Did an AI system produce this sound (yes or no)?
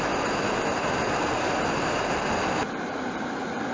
no